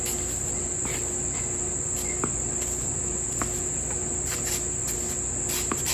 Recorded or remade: recorded